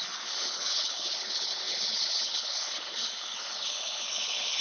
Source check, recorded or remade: remade